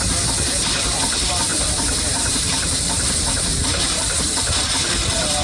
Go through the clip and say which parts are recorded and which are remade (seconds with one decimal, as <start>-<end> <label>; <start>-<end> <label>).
0.0-1.5 recorded; 1.5-4.0 remade; 4.0-5.4 recorded